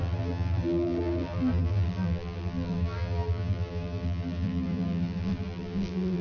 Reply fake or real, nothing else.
fake